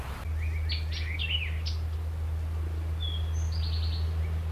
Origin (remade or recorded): recorded